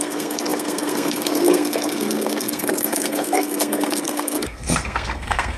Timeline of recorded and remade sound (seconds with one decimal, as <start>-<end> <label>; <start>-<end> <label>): 0.0-5.6 remade